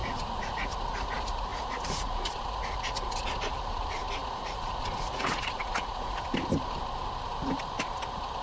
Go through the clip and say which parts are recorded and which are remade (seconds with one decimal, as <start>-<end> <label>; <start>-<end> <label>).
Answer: 0.0-0.7 remade; 0.7-1.5 recorded; 1.5-2.6 remade; 2.6-4.2 recorded; 4.2-6.2 remade; 6.2-8.4 recorded